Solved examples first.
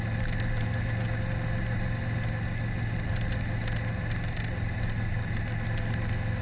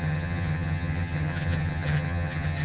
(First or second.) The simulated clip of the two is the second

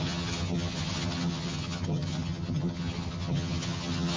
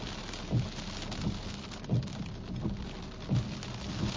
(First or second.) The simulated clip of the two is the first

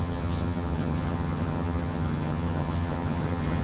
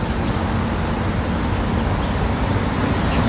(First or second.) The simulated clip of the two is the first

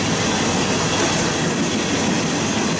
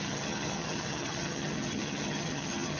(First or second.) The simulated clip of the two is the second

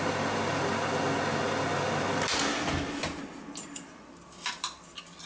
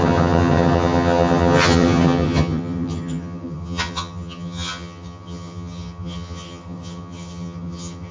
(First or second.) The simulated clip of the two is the second